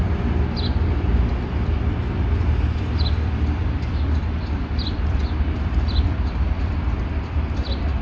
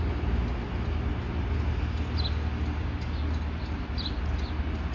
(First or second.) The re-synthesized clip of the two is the first